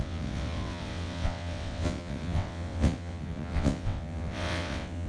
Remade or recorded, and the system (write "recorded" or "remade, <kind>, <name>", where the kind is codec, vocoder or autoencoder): remade, vocoder, WaveNeXt